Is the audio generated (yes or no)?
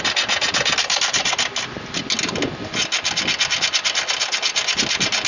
no